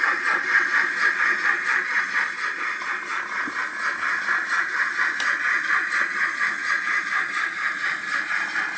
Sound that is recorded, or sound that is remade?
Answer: recorded